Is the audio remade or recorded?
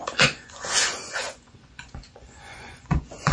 remade